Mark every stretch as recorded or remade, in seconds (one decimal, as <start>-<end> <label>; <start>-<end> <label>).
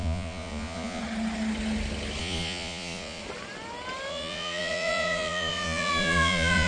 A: 0.0-1.0 remade; 1.0-2.2 recorded; 2.2-3.2 remade; 3.2-4.1 recorded; 4.1-6.7 remade